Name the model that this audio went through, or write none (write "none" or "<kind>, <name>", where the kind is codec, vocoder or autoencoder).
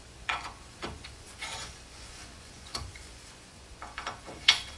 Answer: vocoder, Vocos